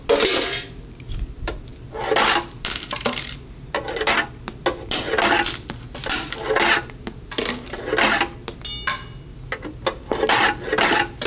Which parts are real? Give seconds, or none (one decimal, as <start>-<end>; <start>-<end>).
0.0-11.3

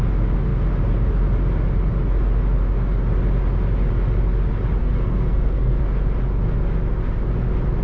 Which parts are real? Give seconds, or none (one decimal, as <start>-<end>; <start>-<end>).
0.0-4.8; 5.8-7.8

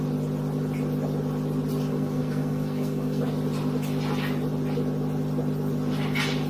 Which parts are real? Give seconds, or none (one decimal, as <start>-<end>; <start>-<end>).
0.0-1.9; 3.2-6.5

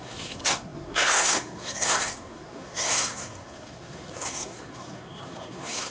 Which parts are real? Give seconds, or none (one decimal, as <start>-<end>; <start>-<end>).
none